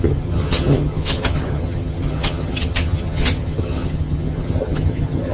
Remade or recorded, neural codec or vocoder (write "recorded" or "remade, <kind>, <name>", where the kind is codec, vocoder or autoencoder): remade, vocoder, HiFi-GAN